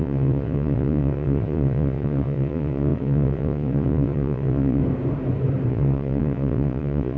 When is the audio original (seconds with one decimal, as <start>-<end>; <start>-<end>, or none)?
4.8-5.7

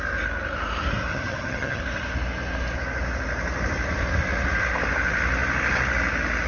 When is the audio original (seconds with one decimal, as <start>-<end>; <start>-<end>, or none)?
0.0-1.1; 1.8-6.5

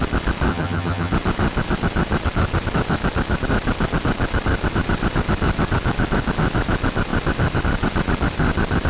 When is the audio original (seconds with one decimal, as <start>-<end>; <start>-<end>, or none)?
0.0-0.5; 1.1-8.9